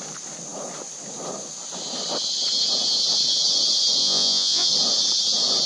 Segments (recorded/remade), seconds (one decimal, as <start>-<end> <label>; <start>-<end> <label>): 0.0-4.0 recorded; 4.0-4.7 remade; 4.7-5.7 recorded